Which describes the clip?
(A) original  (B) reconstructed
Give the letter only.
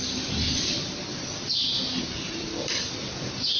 A